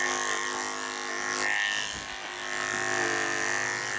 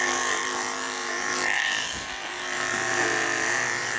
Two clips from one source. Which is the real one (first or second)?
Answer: first